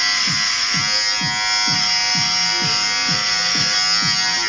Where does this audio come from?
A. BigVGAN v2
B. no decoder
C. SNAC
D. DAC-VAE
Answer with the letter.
B